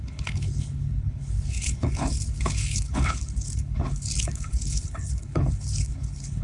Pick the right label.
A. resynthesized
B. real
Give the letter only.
A